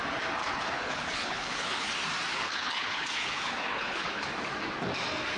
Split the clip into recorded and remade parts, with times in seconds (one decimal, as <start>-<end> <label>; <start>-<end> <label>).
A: 0.0-0.4 recorded; 0.4-1.9 remade; 1.9-2.3 recorded; 2.3-4.3 remade; 4.3-5.4 recorded